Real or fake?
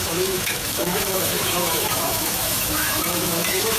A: fake